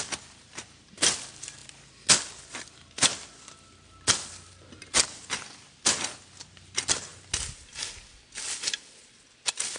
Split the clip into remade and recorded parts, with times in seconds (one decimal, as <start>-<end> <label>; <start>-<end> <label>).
0.0-9.8 recorded